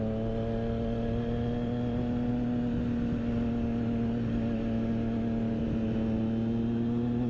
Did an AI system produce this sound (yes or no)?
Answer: no